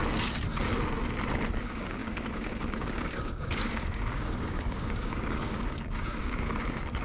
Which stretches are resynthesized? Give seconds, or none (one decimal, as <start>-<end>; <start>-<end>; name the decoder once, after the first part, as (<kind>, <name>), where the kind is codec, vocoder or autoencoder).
1.6-7.0 (codec, DAC)